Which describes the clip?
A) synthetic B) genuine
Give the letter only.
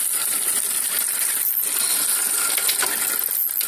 B